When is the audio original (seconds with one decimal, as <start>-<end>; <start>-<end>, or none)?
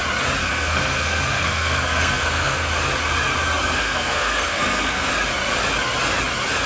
0.0-0.4; 2.7-3.6; 5.1-6.7